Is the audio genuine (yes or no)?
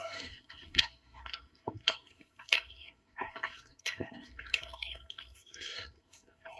no